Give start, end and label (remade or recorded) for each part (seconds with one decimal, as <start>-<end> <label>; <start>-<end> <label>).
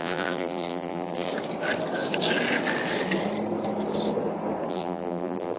0.0-1.3 remade; 1.3-4.7 recorded; 4.7-5.6 remade